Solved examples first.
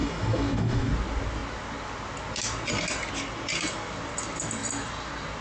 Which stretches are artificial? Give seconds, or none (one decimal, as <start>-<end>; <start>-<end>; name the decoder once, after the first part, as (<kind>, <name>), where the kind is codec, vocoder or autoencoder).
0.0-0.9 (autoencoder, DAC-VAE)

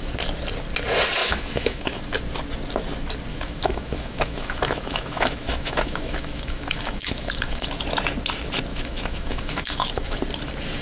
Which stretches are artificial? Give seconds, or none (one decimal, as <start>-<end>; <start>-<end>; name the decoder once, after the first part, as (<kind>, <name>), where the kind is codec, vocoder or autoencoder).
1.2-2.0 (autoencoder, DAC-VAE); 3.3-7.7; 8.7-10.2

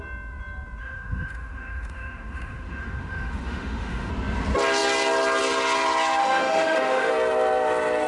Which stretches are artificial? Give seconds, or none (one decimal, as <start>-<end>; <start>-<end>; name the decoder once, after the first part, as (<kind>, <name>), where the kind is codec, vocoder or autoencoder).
0.8-4.1 (autoencoder, DAC-VAE); 6.2-7.1

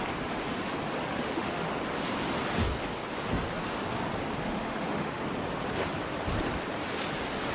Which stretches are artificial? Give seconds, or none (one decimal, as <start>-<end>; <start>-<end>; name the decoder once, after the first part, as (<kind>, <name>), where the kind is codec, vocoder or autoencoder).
1.1-1.7 (autoencoder, DAC-VAE); 4.4-5.2

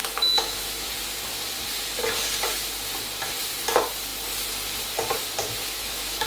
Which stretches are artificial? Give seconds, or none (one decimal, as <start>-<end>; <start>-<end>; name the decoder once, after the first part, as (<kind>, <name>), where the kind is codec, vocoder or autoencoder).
0.0-0.9 (autoencoder, DAC-VAE); 5.6-6.3

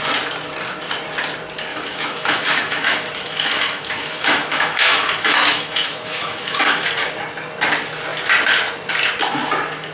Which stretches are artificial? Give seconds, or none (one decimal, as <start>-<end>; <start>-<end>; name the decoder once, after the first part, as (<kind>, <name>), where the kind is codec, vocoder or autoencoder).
1.7-6.9 (autoencoder, DAC-VAE)

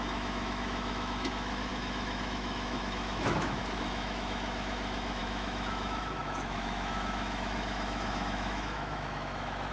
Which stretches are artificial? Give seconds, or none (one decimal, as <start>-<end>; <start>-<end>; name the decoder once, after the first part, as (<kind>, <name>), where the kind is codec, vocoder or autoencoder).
0.0-9.7 (autoencoder, DAC-VAE)

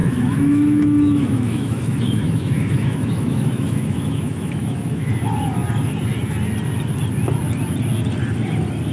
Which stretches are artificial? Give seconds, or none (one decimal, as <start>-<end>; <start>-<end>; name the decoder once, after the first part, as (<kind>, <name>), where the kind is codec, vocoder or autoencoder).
0.0-5.1 (autoencoder, DAC-VAE)